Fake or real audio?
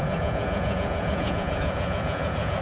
fake